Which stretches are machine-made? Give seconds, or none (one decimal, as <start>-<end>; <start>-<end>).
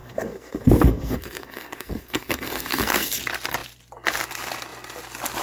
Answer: 0.0-3.2